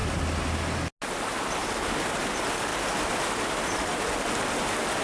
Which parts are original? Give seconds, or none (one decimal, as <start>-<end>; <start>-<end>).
0.0-5.0